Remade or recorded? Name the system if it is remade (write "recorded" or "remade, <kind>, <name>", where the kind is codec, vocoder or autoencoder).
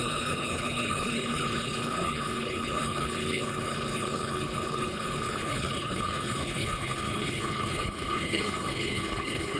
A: remade, codec, HILCodec